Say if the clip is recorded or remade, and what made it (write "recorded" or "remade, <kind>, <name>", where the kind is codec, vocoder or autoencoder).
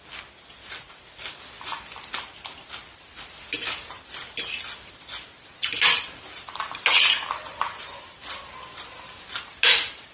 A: recorded